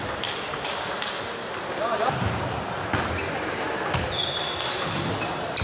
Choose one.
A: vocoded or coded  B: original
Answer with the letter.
B